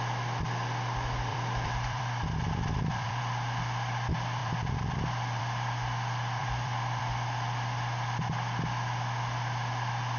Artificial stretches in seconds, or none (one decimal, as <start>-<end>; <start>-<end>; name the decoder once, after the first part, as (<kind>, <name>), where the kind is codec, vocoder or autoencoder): 1.3-3.2 (vocoder, BigVGAN v2); 4.4-5.4; 6.4-7.0